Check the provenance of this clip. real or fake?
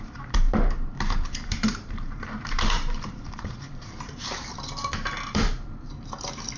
fake